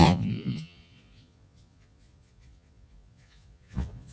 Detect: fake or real fake